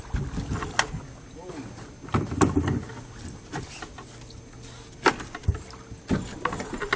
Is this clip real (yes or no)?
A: yes